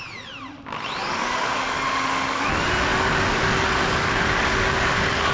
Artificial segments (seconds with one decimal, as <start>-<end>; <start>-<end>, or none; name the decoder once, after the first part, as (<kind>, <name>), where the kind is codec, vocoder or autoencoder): 1.0-2.5 (codec, DAC); 2.9-5.3